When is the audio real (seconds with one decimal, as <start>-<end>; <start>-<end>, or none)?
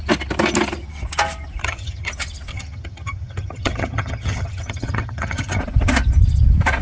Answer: 0.0-1.6; 2.1-2.5; 5.6-6.8